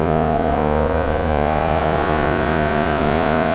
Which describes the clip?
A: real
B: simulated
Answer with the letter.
B